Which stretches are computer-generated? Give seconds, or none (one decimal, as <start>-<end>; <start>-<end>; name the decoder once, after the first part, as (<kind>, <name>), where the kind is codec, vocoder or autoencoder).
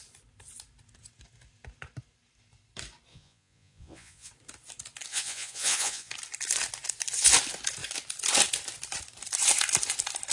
3.1-4.3 (vocoder, Vocos); 5.1-6.1